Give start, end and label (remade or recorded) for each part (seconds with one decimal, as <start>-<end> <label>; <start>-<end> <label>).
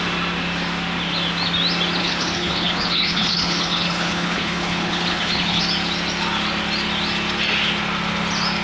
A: 0.0-2.0 recorded; 2.0-5.6 remade; 5.6-8.6 recorded